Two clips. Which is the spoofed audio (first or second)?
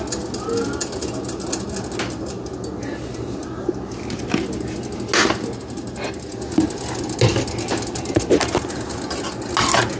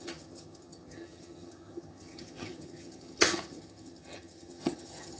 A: second